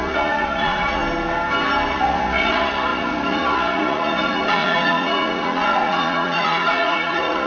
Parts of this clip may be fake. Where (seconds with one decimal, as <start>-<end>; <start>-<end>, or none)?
0.0-1.0; 1.9-7.5